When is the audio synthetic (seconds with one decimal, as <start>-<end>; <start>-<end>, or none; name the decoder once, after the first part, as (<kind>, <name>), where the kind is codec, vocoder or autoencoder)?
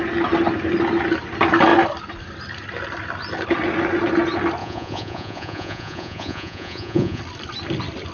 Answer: 4.6-7.2 (vocoder, Vocos)